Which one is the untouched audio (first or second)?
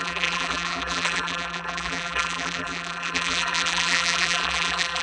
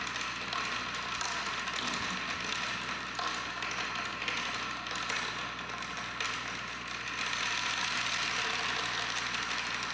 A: second